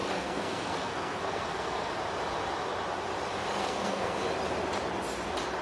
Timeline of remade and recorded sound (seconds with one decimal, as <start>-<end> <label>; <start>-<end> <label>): 0.0-1.9 remade; 1.9-3.6 recorded; 3.6-4.2 remade; 4.2-5.6 recorded